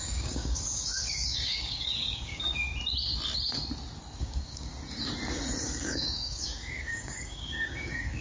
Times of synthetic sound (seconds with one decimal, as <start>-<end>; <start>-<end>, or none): 0.0-2.7; 4.2-4.7; 5.6-8.2